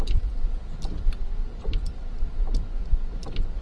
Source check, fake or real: real